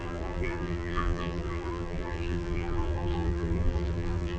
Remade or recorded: remade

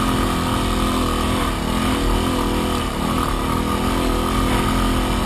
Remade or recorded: recorded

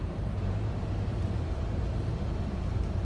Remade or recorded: remade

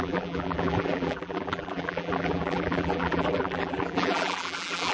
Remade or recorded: remade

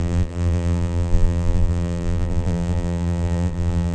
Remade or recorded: remade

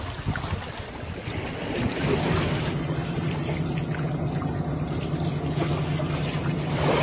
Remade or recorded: recorded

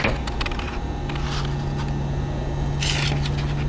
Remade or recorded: recorded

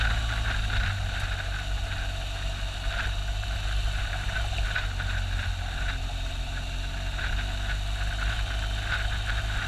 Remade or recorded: recorded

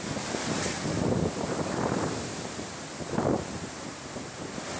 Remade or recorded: remade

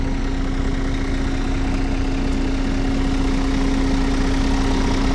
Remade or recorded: recorded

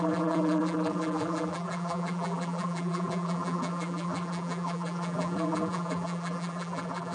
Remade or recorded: remade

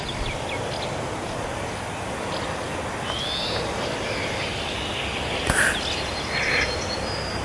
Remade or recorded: recorded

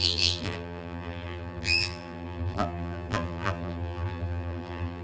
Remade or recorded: remade